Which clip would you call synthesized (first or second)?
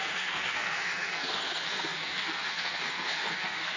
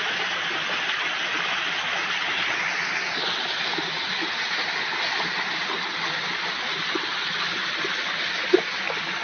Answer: first